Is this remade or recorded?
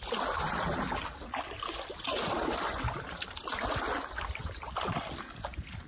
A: recorded